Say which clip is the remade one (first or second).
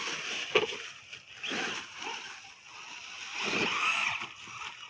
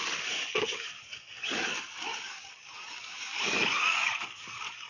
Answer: second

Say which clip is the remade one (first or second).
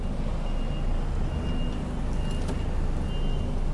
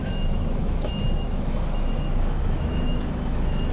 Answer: second